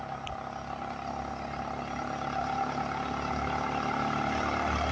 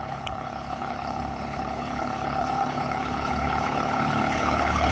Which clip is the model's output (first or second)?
second